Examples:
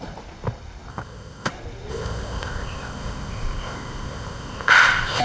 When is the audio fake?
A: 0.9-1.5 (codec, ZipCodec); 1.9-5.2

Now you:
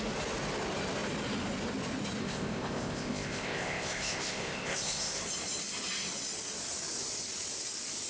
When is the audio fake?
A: 2.2-5.2 (codec, ZipCodec)